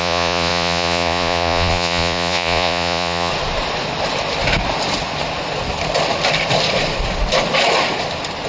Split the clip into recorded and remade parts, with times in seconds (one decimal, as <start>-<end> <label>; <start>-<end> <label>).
0.0-3.3 remade; 3.3-8.5 recorded